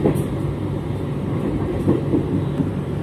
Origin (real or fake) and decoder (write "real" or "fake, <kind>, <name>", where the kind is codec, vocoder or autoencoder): real